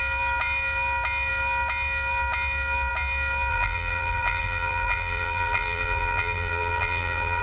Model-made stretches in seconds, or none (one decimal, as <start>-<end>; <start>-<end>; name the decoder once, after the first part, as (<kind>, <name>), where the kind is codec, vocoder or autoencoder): 3.5-7.4 (vocoder, BigVGAN v2)